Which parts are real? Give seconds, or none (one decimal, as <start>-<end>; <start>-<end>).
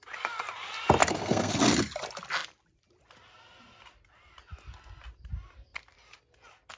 0.0-1.0; 1.6-6.8